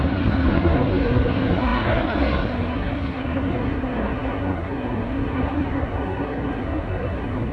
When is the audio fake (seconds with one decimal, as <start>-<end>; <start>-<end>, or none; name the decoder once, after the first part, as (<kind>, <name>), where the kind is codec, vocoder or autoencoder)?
0.0-7.5 (codec, SNAC)